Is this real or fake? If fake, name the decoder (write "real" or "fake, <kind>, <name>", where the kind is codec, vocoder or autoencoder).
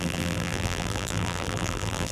fake, vocoder, BigVGAN v2